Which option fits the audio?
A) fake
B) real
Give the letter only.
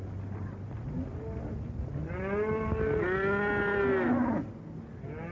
B